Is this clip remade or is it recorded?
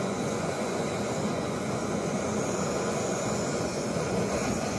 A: remade